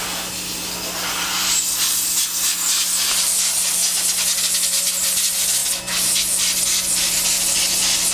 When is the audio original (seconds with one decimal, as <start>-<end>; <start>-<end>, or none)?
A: 0.0-8.1